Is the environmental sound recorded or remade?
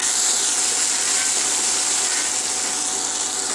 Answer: recorded